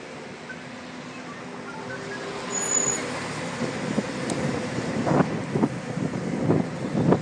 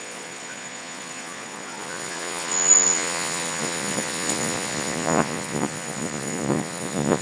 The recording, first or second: first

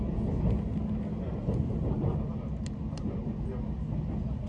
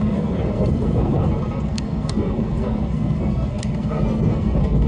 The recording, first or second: first